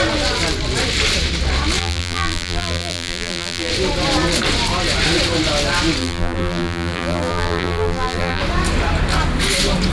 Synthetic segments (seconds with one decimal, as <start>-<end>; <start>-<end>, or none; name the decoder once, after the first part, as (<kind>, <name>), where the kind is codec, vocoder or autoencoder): 1.8-3.7 (vocoder, BigVGAN v2); 6.0-8.4